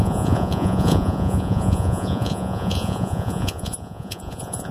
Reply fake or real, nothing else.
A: fake